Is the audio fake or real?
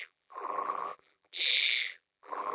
fake